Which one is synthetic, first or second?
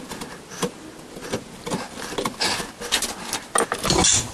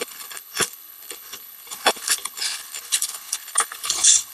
second